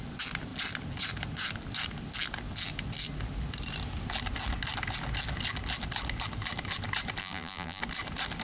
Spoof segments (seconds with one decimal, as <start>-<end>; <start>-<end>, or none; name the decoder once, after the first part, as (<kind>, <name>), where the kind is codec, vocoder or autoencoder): 7.2-7.8 (vocoder, BigVGAN v2)